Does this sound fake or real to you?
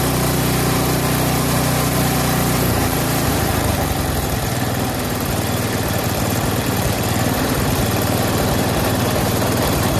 fake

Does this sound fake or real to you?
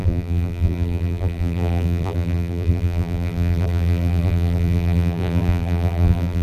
fake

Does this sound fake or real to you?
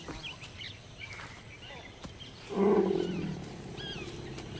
fake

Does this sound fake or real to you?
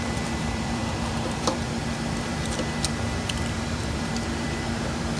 fake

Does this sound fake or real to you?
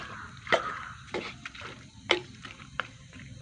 fake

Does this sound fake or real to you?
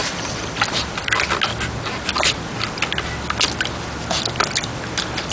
real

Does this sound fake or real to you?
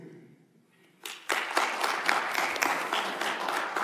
real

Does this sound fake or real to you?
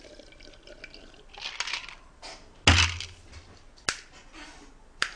real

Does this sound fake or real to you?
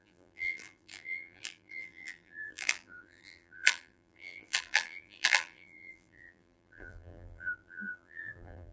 fake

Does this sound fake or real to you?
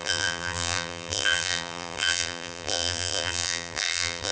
fake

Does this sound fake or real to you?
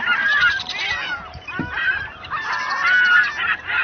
fake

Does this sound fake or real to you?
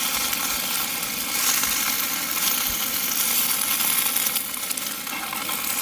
real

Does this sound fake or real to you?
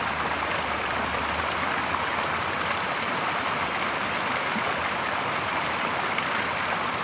fake